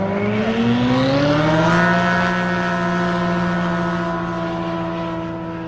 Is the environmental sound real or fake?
real